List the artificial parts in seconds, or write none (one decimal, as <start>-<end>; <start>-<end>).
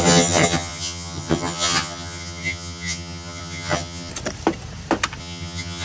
0.0-4.1; 5.2-5.8